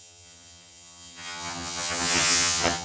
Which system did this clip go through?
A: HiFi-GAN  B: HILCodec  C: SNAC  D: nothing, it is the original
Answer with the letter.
A